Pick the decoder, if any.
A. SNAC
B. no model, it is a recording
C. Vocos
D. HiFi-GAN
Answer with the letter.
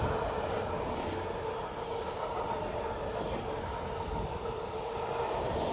B